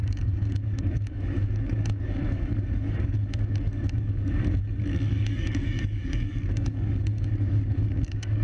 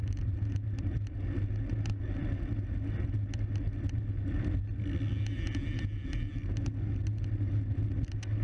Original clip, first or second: second